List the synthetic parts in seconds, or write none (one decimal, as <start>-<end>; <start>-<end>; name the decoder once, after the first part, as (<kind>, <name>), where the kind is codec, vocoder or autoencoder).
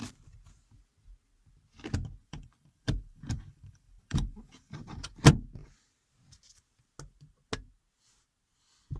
2.2-5.1 (vocoder, BigVGAN v2)